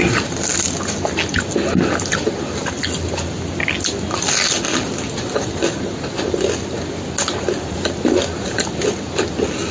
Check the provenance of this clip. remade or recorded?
recorded